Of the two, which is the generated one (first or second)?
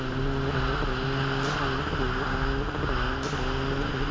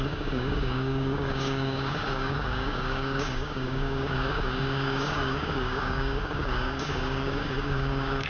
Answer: second